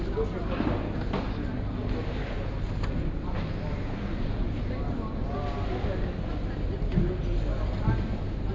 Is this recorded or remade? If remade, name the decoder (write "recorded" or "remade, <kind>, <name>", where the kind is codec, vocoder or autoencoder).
recorded